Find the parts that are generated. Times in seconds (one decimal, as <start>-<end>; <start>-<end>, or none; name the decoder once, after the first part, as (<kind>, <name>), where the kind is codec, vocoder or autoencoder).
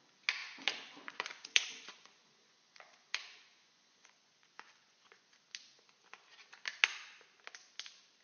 0.4-5.3 (vocoder, Vocos)